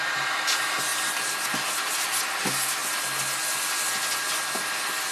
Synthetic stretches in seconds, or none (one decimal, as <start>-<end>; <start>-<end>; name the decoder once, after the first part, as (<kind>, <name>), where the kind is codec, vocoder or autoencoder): none